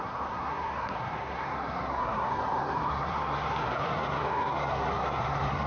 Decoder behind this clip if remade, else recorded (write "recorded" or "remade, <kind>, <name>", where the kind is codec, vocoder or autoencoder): remade, codec, SNAC